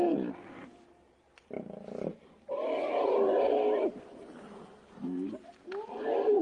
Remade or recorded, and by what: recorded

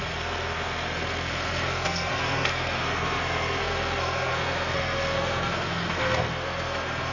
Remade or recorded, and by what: remade, codec, SNAC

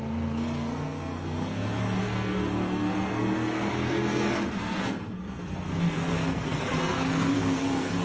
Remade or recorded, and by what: remade, codec, SNAC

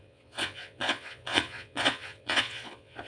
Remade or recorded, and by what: remade, vocoder, Vocos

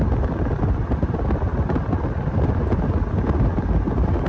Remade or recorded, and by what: recorded